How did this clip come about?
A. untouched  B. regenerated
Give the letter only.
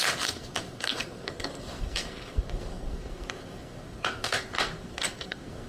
B